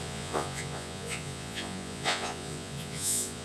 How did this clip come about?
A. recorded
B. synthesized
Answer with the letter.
B